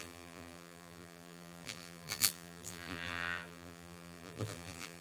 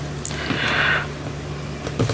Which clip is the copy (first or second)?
first